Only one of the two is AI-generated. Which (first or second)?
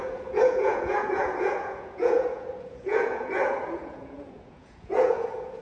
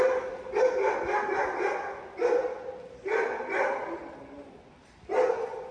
first